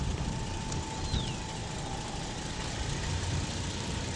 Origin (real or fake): real